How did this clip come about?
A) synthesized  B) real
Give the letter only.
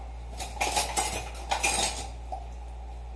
B